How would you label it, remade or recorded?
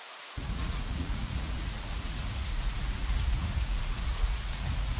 remade